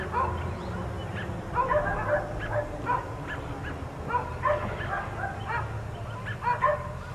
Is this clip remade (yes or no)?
no